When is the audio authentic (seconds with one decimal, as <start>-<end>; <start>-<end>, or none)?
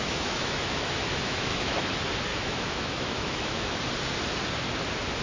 1.9-2.3; 3.8-5.2